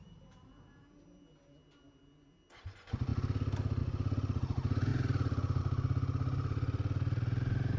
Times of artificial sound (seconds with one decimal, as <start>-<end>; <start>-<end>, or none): none